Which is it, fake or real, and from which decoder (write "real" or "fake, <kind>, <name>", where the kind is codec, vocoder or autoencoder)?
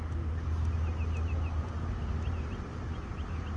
real